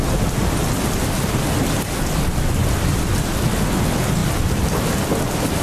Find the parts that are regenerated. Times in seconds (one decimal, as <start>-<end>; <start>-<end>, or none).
4.2-4.7